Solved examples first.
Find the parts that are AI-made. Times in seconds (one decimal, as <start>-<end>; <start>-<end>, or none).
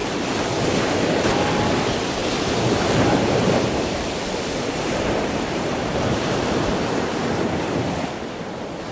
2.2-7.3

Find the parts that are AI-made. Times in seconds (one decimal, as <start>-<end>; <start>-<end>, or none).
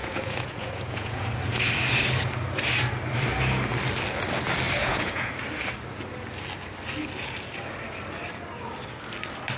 0.0-1.3; 4.8-5.3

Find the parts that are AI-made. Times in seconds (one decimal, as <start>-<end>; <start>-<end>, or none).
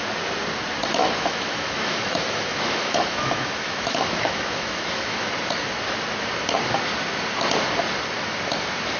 1.0-5.3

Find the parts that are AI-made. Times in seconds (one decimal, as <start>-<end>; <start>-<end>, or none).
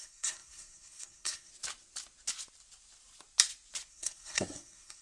0.0-1.5; 3.9-5.0